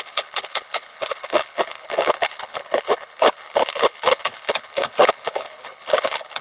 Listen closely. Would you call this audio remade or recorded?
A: remade